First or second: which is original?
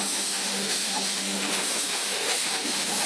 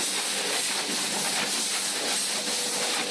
second